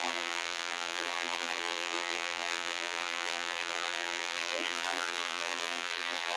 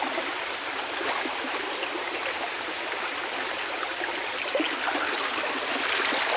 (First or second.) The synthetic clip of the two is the first